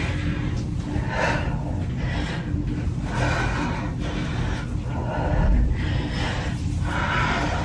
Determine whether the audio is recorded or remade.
recorded